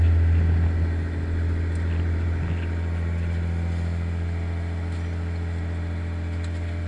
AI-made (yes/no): no